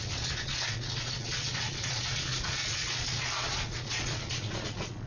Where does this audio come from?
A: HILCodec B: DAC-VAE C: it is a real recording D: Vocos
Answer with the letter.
D